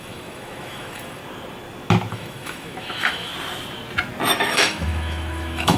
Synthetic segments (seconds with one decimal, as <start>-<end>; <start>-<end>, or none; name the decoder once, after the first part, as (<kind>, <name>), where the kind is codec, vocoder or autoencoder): 0.0-1.2 (autoencoder, DAC-VAE); 2.1-3.3; 4.4-5.8